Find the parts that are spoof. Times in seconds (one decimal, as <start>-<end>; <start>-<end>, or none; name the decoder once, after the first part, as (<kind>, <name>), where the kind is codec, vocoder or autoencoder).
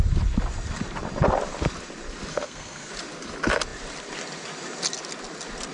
2.3-2.9 (codec, SNAC)